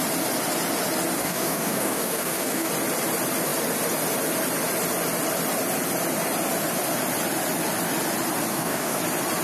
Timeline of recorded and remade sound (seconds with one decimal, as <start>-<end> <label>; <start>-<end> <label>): 0.0-1.2 recorded; 1.2-2.7 remade; 2.7-8.5 recorded; 8.5-9.0 remade; 9.0-9.4 recorded